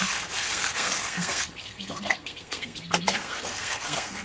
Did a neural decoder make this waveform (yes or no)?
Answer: yes